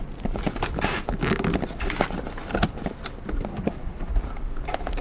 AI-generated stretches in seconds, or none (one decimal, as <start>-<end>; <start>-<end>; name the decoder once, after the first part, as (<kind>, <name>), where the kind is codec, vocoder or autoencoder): 3.5-4.1 (codec, SNAC)